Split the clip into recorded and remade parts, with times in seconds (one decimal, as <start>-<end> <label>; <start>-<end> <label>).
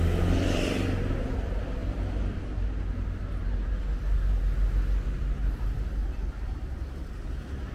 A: 0.0-7.7 recorded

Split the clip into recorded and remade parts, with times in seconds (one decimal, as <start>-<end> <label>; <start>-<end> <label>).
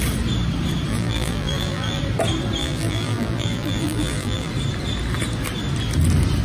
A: 0.0-0.9 recorded; 0.9-2.0 remade; 2.0-2.6 recorded; 2.6-4.5 remade; 4.5-6.4 recorded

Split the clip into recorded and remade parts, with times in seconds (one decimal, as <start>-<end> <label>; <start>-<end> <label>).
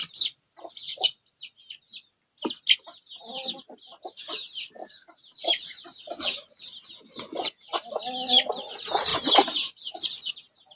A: 0.0-4.8 recorded; 4.8-6.5 remade; 6.5-9.1 recorded; 9.1-10.3 remade; 10.3-10.8 recorded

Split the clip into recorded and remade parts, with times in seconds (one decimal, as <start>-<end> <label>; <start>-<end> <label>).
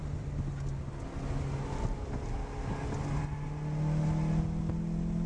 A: 0.0-5.3 recorded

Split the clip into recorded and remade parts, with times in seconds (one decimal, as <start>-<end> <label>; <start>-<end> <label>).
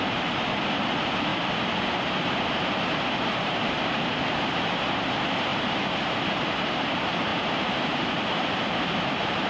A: 0.0-1.3 remade; 1.3-2.1 recorded; 2.1-9.5 remade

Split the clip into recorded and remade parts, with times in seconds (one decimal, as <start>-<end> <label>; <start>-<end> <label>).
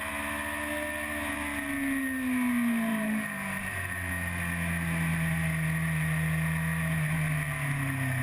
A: 0.0-2.9 recorded; 2.9-4.1 remade; 4.1-8.2 recorded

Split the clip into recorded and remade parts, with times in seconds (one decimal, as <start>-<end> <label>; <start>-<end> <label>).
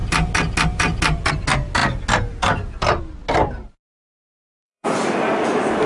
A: 0.0-4.2 recorded; 4.2-5.0 remade; 5.0-5.9 recorded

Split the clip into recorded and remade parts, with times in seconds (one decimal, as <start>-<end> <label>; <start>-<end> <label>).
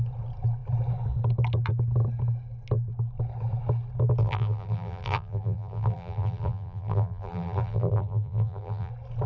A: 0.0-4.2 recorded; 4.2-8.9 remade; 8.9-9.3 recorded